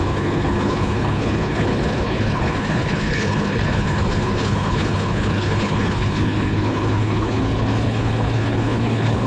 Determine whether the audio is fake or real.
fake